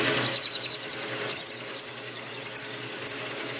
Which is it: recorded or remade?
remade